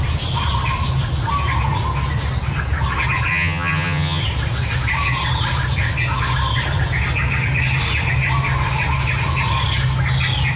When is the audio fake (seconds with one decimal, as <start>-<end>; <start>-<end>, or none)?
3.3-4.2